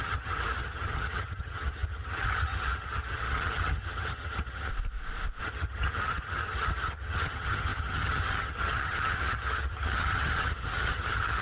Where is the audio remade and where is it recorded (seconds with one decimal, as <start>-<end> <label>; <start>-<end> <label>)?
0.0-4.7 remade; 4.7-5.4 recorded; 5.4-11.4 remade